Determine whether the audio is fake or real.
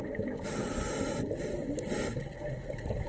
real